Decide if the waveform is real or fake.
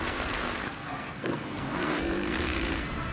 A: fake